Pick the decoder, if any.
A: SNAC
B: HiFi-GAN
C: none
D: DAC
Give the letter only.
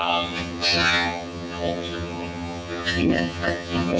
B